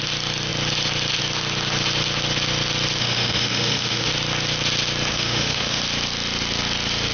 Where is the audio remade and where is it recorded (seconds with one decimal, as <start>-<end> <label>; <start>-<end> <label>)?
0.0-3.0 recorded; 3.0-4.1 remade; 4.1-5.1 recorded; 5.1-5.8 remade; 5.8-7.1 recorded

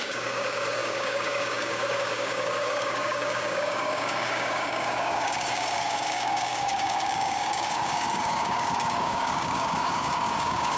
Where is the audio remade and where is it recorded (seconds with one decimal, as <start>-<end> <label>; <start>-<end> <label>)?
0.0-10.8 remade

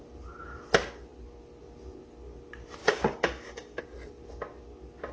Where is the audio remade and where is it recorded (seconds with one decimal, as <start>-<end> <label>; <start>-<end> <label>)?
0.0-2.8 recorded; 2.8-3.8 remade; 3.8-5.1 recorded

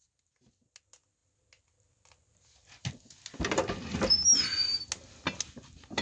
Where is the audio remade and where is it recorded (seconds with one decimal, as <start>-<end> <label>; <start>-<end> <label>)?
0.0-6.0 recorded

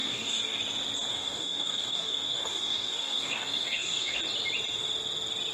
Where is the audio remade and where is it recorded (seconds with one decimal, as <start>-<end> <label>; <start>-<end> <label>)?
0.0-0.6 remade; 0.6-1.1 recorded; 1.1-4.2 remade; 4.2-5.5 recorded

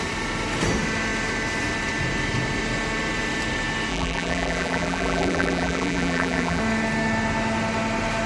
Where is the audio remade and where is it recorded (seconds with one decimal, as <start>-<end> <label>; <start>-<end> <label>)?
0.0-3.9 recorded; 3.9-6.6 remade; 6.6-8.3 recorded

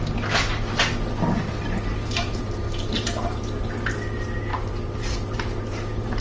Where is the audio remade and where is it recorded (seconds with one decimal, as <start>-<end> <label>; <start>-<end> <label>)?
0.0-1.9 recorded; 1.9-3.2 remade; 3.2-4.5 recorded; 4.5-6.2 remade